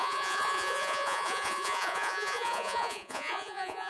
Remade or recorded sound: remade